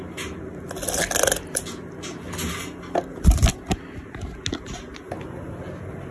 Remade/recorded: recorded